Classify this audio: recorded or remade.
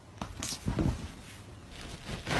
recorded